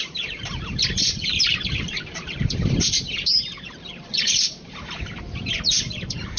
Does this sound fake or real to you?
fake